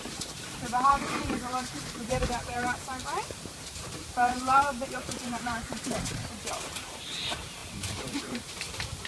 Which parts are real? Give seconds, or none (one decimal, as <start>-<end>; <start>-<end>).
none